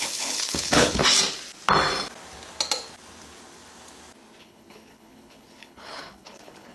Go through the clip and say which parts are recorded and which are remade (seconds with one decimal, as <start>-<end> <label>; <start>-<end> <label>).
0.0-1.0 remade; 1.0-4.4 recorded; 4.4-6.7 remade